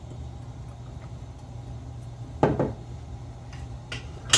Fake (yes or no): no